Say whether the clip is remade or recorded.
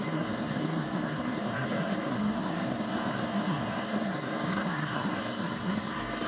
remade